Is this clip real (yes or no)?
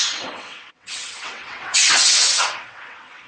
no